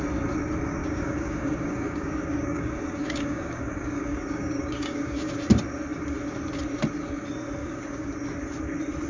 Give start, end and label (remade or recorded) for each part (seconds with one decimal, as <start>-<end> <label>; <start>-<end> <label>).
0.0-0.8 recorded; 0.8-5.3 remade; 5.3-7.6 recorded; 7.6-8.1 remade; 8.1-9.1 recorded